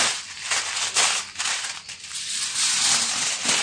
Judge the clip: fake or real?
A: real